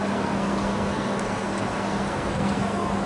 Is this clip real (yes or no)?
no